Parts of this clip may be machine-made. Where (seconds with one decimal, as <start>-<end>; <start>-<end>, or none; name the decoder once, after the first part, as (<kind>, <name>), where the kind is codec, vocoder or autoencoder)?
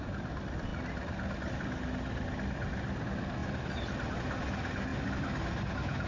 none